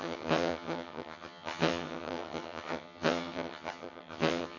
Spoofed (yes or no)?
yes